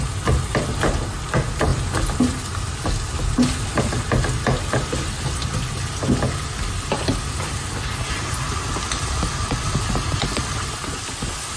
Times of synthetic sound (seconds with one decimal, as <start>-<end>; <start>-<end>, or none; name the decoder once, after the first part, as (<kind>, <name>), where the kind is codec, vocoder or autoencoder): none